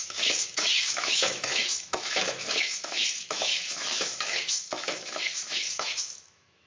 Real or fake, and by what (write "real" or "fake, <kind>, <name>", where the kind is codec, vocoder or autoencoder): fake, autoencoder, DAC-VAE